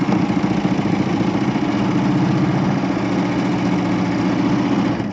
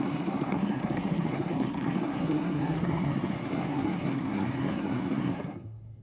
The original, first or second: first